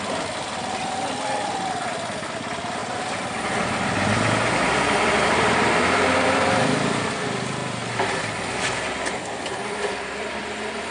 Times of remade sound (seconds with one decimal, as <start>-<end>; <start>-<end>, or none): 0.0-10.4